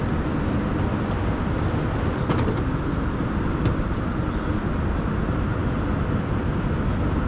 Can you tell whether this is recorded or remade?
recorded